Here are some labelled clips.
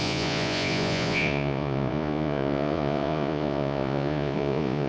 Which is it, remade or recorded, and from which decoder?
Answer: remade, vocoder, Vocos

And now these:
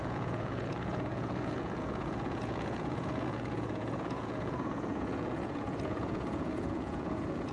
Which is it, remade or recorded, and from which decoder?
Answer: remade, vocoder, Vocos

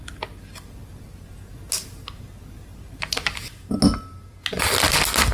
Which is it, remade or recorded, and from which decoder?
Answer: recorded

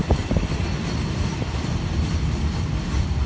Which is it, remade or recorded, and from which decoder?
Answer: recorded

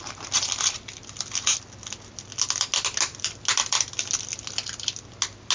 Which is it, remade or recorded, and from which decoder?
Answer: recorded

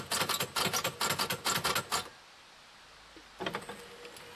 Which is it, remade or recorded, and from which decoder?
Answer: recorded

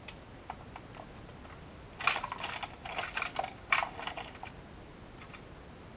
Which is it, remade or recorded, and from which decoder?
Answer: recorded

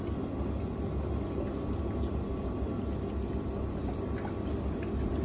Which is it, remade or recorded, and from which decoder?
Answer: recorded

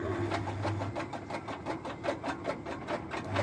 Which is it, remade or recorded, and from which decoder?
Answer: recorded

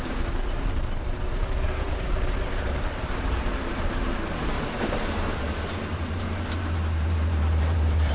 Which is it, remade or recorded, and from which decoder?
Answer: remade, vocoder, BigVGAN v2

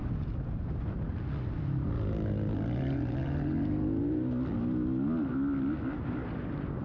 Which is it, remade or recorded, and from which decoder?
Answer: recorded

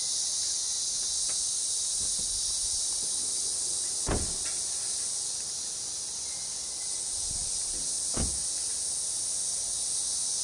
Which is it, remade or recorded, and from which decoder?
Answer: recorded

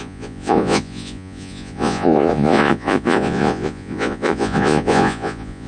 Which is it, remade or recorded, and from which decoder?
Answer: remade, vocoder, Vocos